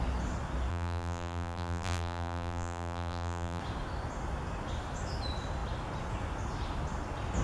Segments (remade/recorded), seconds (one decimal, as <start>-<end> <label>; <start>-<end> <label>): 0.0-0.7 recorded; 0.7-3.6 remade; 3.6-7.4 recorded